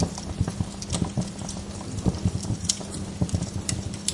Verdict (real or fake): fake